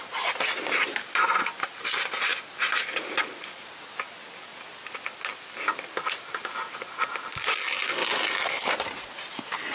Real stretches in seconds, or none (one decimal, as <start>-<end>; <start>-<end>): 0.0-9.7